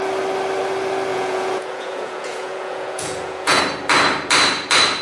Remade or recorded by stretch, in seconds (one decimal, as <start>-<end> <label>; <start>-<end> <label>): 0.0-1.1 recorded; 1.1-3.6 remade; 3.6-5.0 recorded